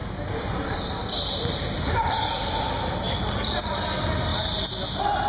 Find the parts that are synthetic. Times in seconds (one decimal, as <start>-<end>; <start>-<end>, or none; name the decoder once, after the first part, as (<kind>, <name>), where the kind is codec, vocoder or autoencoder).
0.0-3.2 (vocoder, BigVGAN v2)